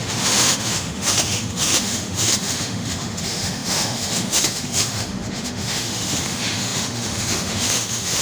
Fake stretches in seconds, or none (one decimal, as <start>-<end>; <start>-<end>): 0.0-8.2

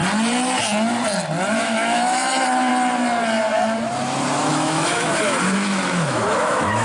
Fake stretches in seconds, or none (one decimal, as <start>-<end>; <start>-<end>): 1.5-2.7; 4.5-6.8

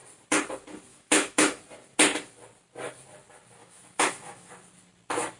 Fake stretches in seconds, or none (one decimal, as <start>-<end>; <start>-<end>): 0.9-1.6; 3.6-4.5